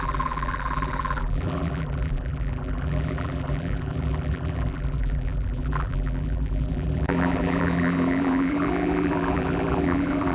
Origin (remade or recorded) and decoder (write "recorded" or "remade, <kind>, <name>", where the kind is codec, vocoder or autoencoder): remade, vocoder, BigVGAN v2